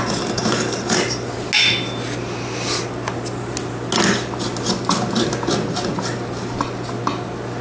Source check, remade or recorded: recorded